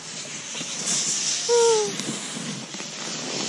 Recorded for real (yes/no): yes